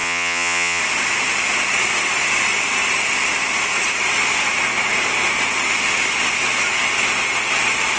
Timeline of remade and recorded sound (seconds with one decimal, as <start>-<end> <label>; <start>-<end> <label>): 0.0-0.8 remade; 0.8-8.0 recorded